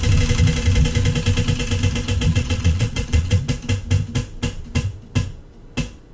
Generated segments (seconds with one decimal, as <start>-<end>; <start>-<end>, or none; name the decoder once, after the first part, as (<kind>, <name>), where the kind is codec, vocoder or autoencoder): 2.3-3.4 (vocoder, Vocos)